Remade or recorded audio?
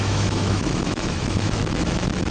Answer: remade